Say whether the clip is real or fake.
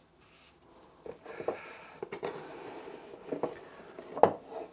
real